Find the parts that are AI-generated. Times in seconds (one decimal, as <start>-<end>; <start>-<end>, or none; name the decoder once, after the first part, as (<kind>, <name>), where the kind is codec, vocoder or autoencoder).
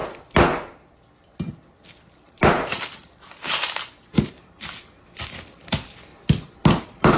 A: 4.3-6.1 (vocoder, BigVGAN v2); 6.8-7.2